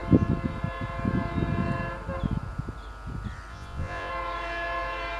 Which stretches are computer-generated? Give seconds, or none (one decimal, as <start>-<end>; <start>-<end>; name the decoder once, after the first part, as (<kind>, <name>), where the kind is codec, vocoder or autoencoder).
3.5-4.1 (vocoder, Vocos)